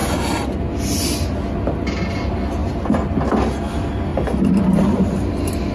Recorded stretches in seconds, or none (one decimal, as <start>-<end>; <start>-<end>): 0.0-5.7